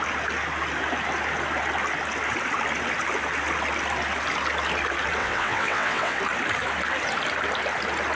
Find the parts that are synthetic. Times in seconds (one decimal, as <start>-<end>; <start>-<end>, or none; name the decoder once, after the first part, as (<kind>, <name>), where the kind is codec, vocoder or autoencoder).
5.2-6.2 (vocoder, WaveNeXt)